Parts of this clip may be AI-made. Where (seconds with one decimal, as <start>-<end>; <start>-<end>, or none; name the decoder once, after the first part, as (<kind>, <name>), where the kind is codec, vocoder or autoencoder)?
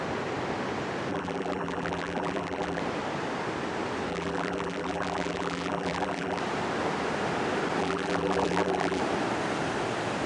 1.1-2.8 (vocoder, BigVGAN v2); 4.1-6.4; 7.8-9.0